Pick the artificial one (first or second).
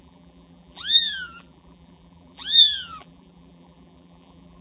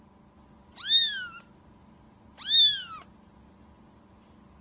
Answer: first